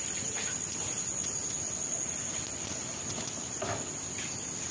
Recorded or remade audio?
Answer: recorded